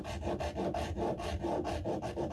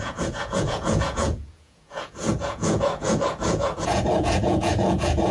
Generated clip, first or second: second